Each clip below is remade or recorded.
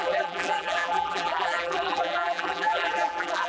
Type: remade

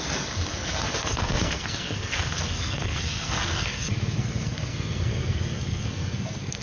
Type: remade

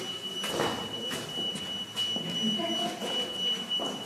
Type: recorded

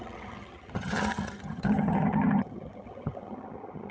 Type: remade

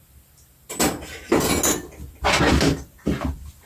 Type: recorded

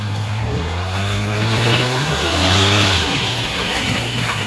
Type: remade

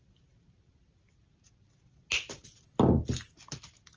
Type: recorded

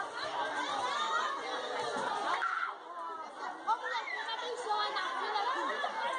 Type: recorded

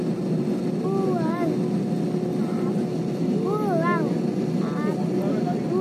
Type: recorded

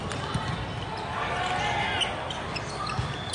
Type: recorded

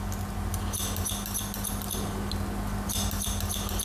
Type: recorded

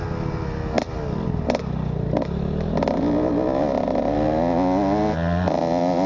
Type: recorded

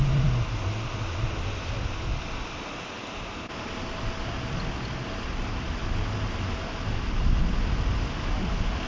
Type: recorded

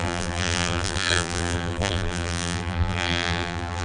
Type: remade